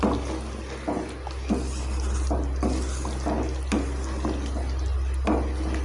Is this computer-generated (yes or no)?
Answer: no